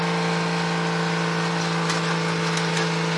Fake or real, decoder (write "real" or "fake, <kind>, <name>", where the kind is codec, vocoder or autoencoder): real